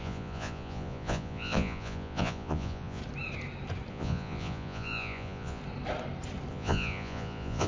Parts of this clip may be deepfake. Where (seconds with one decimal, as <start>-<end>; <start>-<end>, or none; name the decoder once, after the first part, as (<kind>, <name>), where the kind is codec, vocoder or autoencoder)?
0.0-3.0 (vocoder, Vocos); 3.9-5.6; 6.5-7.7